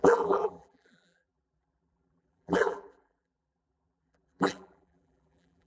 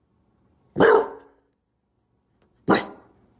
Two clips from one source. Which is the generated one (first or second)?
first